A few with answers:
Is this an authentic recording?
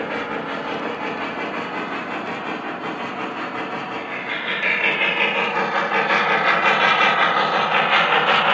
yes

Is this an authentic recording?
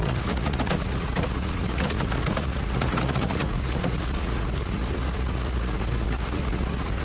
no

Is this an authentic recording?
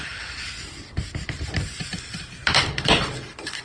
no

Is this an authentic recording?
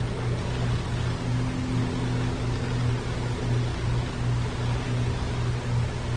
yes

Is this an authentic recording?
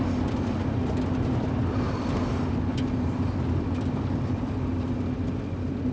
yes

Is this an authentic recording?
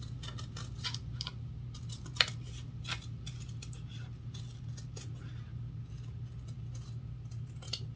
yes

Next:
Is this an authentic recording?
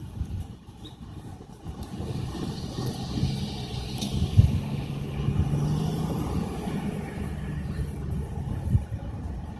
yes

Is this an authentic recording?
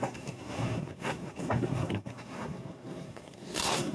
no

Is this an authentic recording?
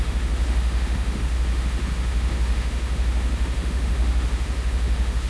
no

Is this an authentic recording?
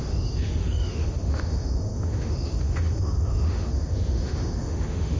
no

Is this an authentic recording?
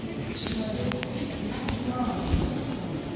yes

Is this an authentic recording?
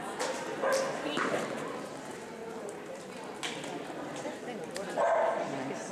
yes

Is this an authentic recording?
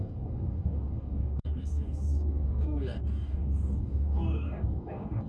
no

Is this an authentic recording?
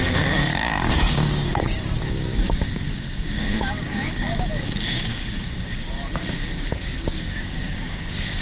no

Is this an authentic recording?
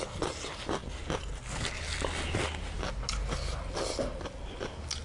yes